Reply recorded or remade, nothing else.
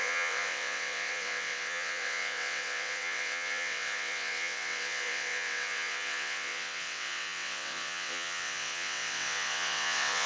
remade